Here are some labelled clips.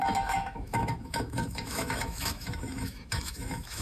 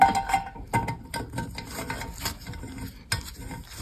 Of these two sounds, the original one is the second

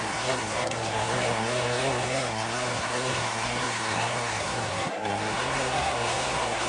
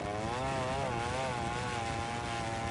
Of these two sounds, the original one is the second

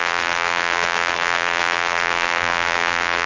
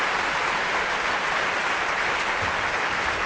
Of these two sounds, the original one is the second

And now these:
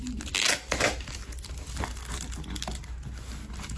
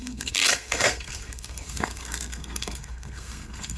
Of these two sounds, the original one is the first